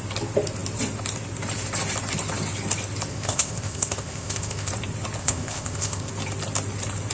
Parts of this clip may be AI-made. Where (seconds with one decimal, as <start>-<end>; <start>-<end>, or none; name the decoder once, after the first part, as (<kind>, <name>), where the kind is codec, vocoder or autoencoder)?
3.1-4.7 (codec, ZipCodec); 5.2-6.1